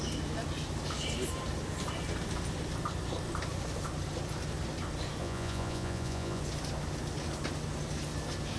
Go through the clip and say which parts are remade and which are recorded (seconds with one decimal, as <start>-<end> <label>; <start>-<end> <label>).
0.0-5.2 recorded; 5.2-6.4 remade; 6.4-8.6 recorded